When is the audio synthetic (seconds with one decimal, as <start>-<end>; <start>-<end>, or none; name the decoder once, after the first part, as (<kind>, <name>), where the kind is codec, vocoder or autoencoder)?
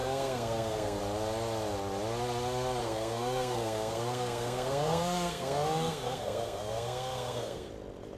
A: 0.0-1.0 (codec, SNAC); 2.8-7.7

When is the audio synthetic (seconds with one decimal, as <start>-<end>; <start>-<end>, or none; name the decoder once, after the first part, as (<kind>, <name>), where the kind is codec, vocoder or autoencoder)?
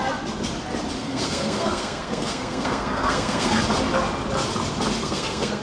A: 1.0-3.6 (codec, SNAC); 5.0-5.6